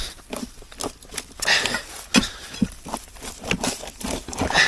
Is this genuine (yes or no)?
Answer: yes